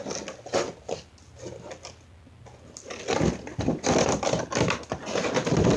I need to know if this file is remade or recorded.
recorded